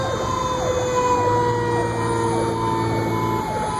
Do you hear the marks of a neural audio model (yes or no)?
no